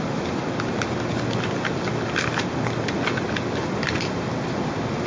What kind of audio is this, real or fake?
real